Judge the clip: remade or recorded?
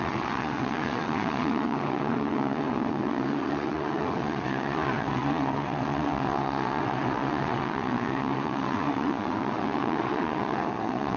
remade